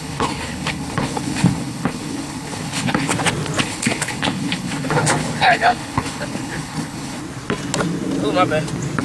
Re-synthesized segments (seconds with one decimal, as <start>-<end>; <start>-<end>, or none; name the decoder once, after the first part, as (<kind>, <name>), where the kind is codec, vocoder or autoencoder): 0.0-3.1 (codec, HILCodec); 3.6-7.2